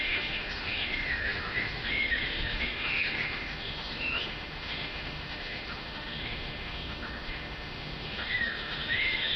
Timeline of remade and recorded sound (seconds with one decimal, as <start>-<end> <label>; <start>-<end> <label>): 0.0-9.4 remade